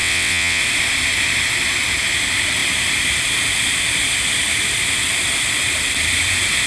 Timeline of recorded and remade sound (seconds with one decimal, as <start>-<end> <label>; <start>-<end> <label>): 0.0-0.6 remade; 0.6-6.7 recorded